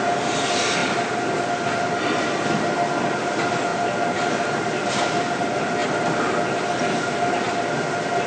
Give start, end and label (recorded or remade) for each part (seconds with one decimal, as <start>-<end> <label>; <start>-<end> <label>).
0.0-8.3 recorded